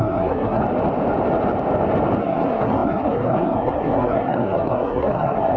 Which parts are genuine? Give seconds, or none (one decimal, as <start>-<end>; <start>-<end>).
0.6-2.2